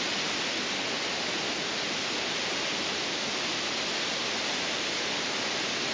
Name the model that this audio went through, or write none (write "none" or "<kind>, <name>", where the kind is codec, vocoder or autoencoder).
none